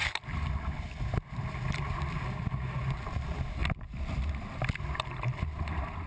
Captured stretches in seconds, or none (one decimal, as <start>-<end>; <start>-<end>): 0.0-6.1